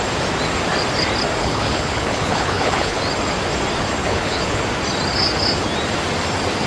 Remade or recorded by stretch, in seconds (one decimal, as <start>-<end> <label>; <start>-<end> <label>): 0.0-1.4 recorded; 1.4-3.0 remade; 3.0-4.0 recorded; 4.0-4.6 remade; 4.6-6.7 recorded